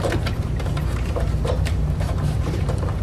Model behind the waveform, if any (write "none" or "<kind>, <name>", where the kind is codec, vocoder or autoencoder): vocoder, BigVGAN v2